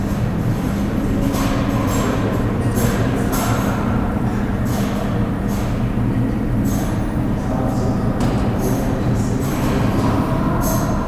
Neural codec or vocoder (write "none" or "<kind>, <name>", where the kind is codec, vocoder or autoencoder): none